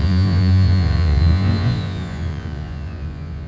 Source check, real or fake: fake